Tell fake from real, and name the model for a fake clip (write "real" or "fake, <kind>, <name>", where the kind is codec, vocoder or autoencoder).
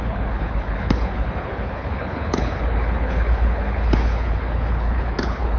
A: fake, codec, HILCodec